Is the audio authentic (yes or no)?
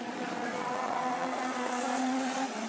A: no